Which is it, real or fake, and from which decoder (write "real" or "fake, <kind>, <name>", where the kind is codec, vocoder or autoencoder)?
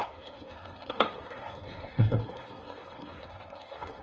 fake, codec, SNAC